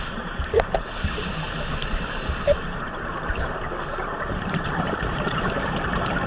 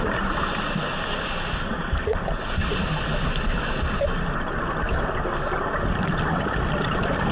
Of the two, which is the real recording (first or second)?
second